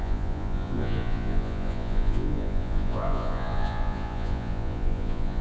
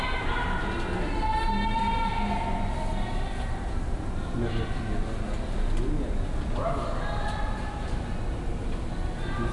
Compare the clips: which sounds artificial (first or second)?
first